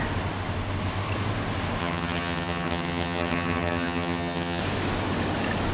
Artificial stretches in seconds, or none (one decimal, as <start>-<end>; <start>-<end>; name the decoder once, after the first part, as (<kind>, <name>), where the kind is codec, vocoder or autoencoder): 1.8-4.6 (vocoder, HiFi-GAN)